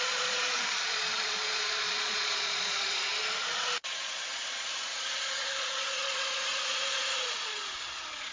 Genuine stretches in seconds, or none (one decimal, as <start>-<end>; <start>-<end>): none